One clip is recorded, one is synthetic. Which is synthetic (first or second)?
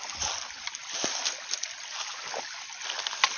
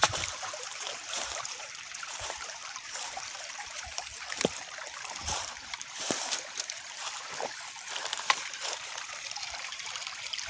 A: second